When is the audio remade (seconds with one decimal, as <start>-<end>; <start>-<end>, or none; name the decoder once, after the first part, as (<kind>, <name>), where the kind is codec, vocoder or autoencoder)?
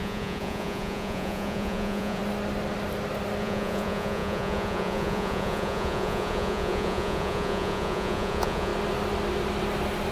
0.0-2.2 (vocoder, Vocos); 3.4-8.7